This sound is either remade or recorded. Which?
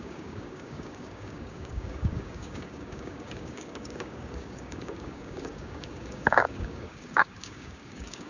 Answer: remade